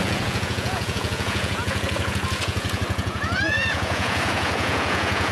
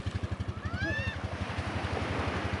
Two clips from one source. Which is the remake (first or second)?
first